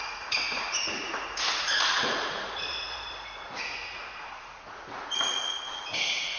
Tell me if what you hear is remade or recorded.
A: remade